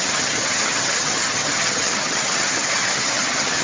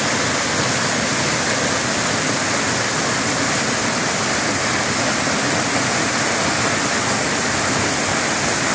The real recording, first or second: second